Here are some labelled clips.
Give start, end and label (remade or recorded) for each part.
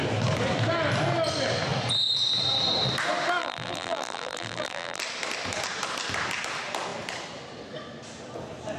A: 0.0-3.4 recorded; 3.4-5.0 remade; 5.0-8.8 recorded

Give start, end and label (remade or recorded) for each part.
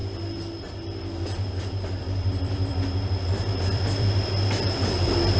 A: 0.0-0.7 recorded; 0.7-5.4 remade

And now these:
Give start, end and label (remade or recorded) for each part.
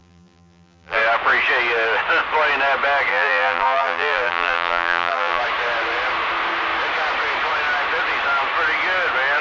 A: 0.0-1.0 remade; 1.0-3.1 recorded; 3.1-5.4 remade; 5.4-9.4 recorded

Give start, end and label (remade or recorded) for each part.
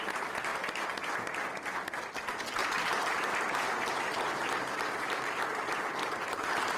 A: 0.0-2.6 recorded; 2.6-6.8 remade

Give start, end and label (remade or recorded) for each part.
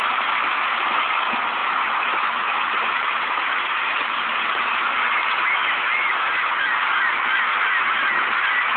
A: 0.0-1.6 recorded; 1.6-5.5 remade; 5.5-8.8 recorded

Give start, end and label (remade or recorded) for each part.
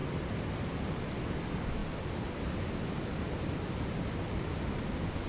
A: 0.0-5.3 recorded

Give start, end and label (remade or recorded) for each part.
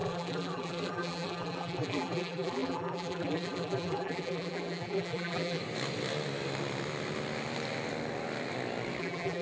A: 0.0-5.6 remade; 5.6-9.0 recorded; 9.0-9.4 remade